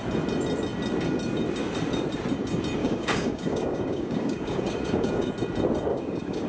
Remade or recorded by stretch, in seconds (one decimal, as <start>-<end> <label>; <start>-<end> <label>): 0.0-2.8 recorded; 2.8-5.3 remade; 5.3-5.9 recorded; 5.9-6.5 remade

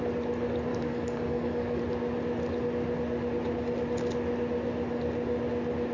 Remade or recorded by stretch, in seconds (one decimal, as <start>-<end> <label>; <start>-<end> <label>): 0.0-0.7 recorded; 0.7-1.8 remade; 1.8-5.9 recorded

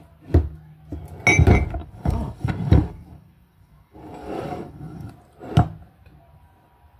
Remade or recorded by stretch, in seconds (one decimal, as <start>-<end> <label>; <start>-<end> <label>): 0.0-1.8 recorded; 1.8-5.1 remade; 5.1-7.0 recorded

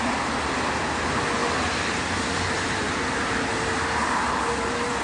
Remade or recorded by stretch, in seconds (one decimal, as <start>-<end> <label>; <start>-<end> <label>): 0.0-5.0 recorded

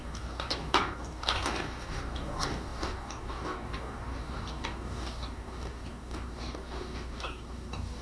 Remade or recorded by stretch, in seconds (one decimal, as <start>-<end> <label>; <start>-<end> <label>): 0.0-8.0 remade